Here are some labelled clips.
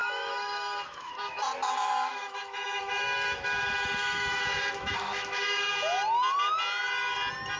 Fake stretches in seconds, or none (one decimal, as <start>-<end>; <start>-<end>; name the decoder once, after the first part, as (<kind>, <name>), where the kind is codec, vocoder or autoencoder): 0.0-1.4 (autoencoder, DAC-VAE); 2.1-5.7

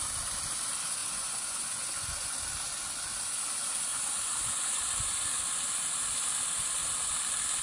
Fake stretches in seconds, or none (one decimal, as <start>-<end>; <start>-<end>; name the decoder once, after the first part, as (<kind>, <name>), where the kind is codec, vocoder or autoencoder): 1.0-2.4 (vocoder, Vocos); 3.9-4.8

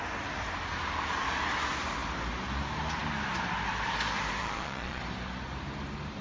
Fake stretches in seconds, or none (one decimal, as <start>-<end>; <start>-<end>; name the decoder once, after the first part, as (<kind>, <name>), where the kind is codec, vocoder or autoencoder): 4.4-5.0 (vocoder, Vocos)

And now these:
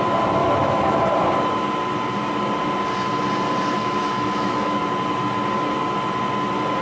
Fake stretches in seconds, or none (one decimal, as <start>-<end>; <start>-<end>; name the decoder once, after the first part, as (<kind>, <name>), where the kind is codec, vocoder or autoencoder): 0.4-1.0 (autoencoder, DAC-VAE); 3.8-4.8

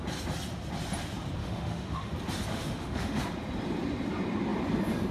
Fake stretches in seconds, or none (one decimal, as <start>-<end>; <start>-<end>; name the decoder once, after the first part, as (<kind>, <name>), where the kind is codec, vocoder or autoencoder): 1.4-2.1 (autoencoder, DAC-VAE); 2.5-3.2

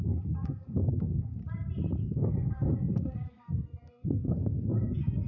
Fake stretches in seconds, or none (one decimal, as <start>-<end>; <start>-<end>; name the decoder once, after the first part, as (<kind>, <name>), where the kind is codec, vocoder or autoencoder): 0.0-1.4 (codec, SNAC); 2.0-5.3